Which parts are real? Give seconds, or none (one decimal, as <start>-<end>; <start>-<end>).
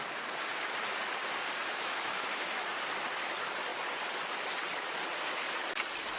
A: 0.0-1.6; 2.7-6.2